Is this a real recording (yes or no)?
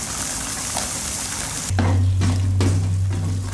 yes